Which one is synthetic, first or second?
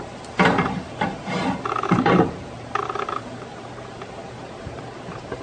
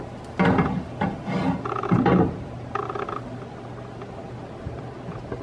first